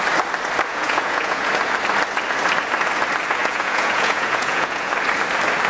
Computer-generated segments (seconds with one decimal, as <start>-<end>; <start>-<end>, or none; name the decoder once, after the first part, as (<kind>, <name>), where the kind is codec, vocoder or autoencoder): 0.7-1.5 (vocoder, Vocos); 3.4-4.9